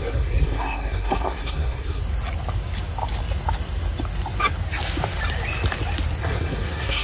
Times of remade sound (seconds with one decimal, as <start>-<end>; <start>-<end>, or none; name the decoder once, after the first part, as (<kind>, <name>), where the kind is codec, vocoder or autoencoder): 0.0-2.0 (codec, SNAC); 6.2-7.0

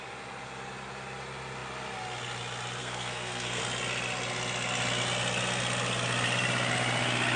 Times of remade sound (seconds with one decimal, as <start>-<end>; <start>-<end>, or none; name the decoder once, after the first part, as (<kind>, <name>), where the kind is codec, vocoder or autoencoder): 2.8-3.6 (codec, SNAC)

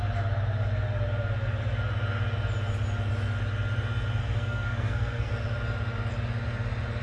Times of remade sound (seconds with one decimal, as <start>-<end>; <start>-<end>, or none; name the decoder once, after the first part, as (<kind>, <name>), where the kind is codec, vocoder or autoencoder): 4.2-5.3 (codec, SNAC)

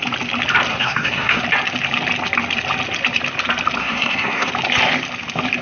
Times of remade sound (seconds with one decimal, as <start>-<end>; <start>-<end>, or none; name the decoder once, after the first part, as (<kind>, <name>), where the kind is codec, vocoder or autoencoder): 0.7-1.4 (codec, SNAC); 3.8-4.5

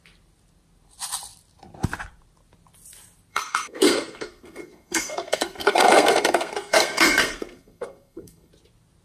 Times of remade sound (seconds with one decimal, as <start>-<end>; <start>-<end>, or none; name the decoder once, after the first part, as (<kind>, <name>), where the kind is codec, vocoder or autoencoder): 3.3-8.5 (codec, SNAC)

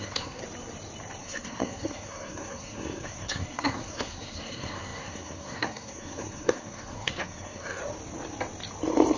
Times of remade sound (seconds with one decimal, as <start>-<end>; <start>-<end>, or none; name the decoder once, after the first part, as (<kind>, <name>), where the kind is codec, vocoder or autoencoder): 0.0-0.4 (codec, SNAC); 1.2-7.8

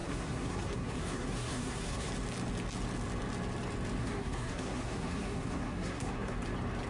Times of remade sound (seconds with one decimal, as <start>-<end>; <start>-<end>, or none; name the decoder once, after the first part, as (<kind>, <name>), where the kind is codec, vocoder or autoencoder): 0.0-2.1 (codec, SNAC); 4.0-6.4

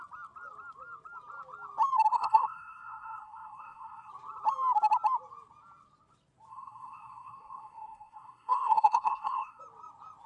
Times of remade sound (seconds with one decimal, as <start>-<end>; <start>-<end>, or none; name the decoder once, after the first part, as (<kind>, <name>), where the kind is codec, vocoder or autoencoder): 2.1-4.1 (codec, SNAC); 6.5-9.6